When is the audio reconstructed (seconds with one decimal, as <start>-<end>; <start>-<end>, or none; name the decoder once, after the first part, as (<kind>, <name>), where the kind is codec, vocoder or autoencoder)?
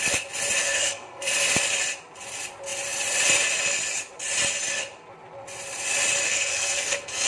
0.6-1.3 (codec, SNAC); 6.3-7.3